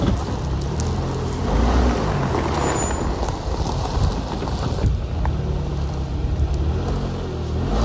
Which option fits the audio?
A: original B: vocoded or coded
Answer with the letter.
A